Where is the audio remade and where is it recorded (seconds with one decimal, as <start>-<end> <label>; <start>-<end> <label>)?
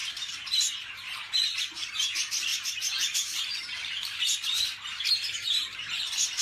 0.0-6.4 remade